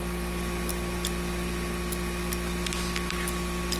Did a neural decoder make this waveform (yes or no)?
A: no